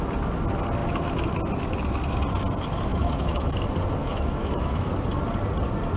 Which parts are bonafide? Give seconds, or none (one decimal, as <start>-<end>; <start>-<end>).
0.0-2.9; 3.5-4.0; 4.9-6.0